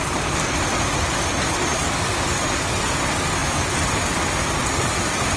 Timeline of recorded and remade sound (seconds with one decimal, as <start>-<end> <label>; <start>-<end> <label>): 0.0-5.4 recorded